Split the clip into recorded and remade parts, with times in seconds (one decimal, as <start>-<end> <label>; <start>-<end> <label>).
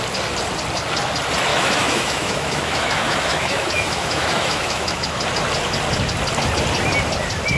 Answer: 0.0-1.5 recorded; 1.5-5.2 remade; 5.2-7.6 recorded